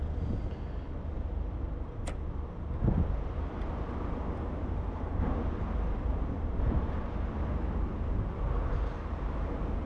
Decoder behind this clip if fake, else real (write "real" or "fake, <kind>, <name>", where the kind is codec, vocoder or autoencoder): real